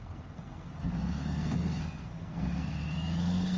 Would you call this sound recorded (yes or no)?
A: no